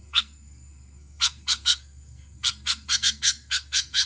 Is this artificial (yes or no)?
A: yes